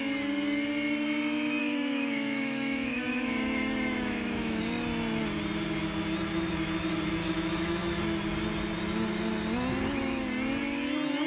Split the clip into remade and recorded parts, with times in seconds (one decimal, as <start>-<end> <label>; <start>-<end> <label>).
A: 0.0-1.6 recorded; 1.6-4.6 remade; 4.6-7.2 recorded; 7.2-8.0 remade; 8.0-11.3 recorded